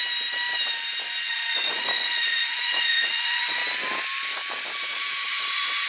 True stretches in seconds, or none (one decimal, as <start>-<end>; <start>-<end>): 0.0-1.2; 3.6-4.8